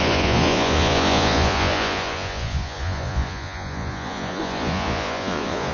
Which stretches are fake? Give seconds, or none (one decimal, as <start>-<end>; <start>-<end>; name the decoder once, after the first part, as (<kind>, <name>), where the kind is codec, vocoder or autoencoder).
0.0-5.7 (vocoder, Vocos)